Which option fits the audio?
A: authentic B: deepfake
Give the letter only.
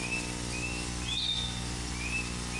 A